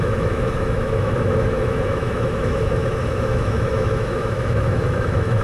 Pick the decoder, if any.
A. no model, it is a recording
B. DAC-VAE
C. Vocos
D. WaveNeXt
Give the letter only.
B